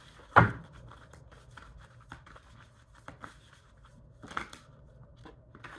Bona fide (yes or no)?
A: yes